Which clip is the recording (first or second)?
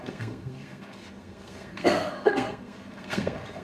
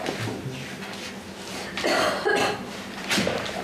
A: second